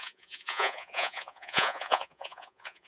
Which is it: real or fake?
fake